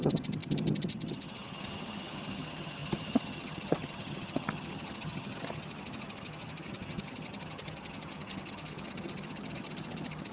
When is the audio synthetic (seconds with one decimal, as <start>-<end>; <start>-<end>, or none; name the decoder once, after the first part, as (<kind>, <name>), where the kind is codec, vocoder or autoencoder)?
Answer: 0.0-10.3 (vocoder, HiFi-GAN)